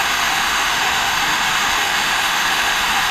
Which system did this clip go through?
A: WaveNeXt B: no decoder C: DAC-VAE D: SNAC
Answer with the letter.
C